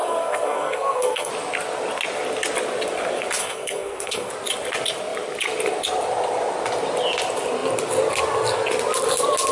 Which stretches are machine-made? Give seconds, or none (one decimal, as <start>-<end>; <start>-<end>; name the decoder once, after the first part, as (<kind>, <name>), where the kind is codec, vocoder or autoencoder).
0.0-1.3 (codec, SNAC); 3.4-4.3